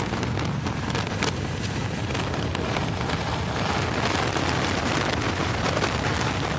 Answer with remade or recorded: recorded